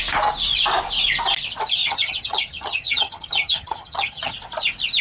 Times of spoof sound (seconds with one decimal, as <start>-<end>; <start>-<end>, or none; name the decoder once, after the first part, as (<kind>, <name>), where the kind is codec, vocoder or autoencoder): 1.8-4.3 (vocoder, HiFi-GAN)